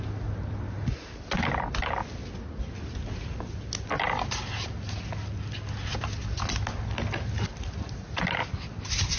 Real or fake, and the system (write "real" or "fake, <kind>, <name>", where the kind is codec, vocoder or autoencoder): real